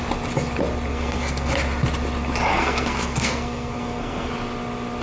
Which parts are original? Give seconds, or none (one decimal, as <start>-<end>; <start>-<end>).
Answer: 0.0-0.9; 1.5-2.5; 4.3-5.0